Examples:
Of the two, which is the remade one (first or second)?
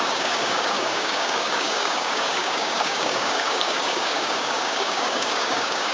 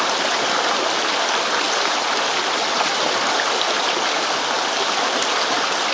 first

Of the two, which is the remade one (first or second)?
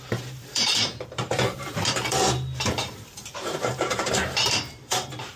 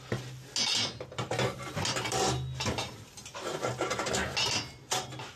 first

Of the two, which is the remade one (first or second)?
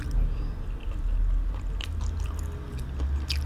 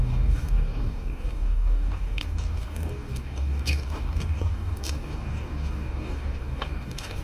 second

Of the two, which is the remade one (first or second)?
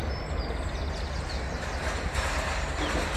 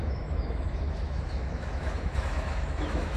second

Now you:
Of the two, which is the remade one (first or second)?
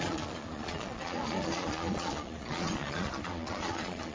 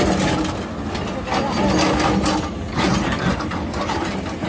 first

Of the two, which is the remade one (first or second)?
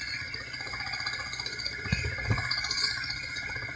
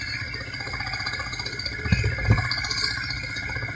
first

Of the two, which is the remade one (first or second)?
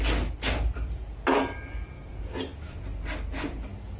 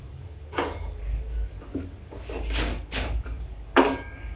second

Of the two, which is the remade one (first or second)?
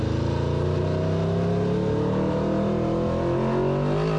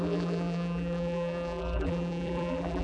second